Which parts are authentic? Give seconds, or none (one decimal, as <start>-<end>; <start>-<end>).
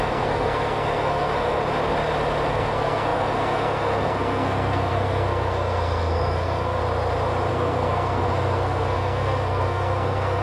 1.6-2.5; 6.8-7.5